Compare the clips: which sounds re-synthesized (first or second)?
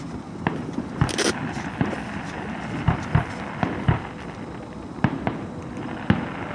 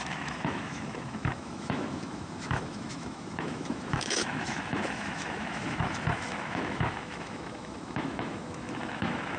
second